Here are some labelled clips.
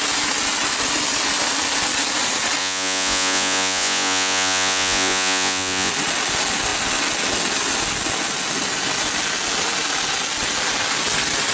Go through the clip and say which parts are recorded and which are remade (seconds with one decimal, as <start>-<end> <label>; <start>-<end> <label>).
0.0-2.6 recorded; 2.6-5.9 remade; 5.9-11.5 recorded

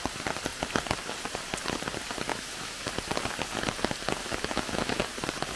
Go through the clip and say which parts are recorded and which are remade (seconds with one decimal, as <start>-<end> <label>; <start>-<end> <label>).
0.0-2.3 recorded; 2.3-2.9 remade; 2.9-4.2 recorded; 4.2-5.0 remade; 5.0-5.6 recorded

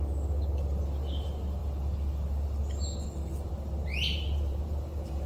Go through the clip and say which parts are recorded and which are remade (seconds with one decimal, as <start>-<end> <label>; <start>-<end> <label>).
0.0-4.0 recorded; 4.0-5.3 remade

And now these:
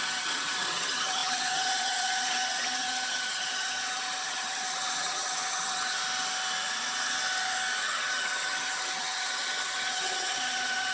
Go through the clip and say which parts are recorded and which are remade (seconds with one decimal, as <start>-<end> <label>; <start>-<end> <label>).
0.0-6.0 remade; 6.0-7.8 recorded; 7.8-10.9 remade

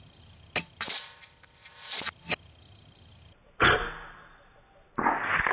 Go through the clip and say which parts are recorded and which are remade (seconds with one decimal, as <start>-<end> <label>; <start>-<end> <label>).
0.0-5.5 recorded